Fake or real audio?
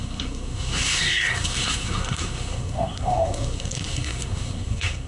fake